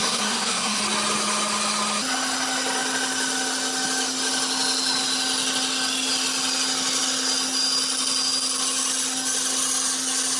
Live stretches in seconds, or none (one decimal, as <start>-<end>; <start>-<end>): 0.8-10.4